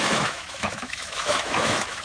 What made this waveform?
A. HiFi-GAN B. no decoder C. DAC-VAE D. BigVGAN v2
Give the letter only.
C